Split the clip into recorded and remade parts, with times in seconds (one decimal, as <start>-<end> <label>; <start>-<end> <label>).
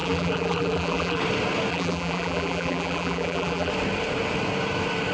0.0-1.2 remade; 1.2-1.7 recorded; 1.7-3.7 remade; 3.7-5.1 recorded